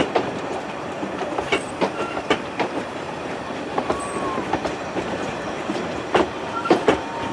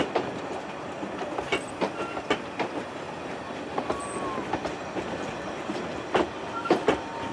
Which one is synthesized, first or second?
first